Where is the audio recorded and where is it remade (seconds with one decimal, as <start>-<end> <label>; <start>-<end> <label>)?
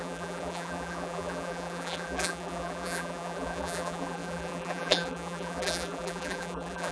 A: 0.0-6.9 remade